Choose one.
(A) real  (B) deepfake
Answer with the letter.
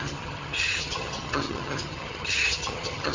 B